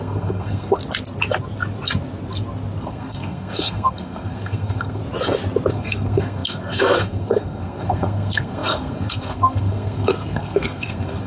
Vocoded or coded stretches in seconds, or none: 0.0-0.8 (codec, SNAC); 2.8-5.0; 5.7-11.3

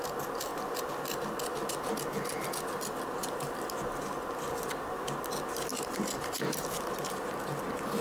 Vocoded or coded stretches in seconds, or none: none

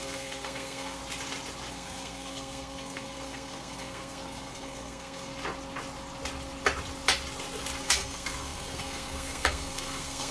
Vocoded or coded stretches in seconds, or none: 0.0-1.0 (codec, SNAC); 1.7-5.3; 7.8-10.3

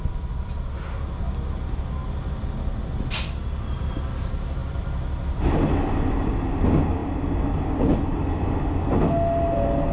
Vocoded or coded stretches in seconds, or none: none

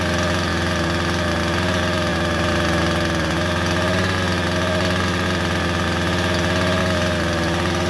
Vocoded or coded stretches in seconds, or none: none

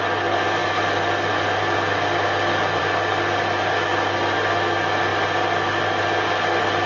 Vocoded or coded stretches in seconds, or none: none

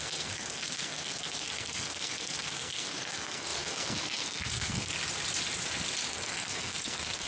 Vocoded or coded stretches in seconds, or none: 0.0-4.9 (codec, SNAC); 6.1-7.3

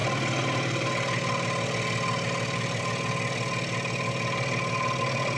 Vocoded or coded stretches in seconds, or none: none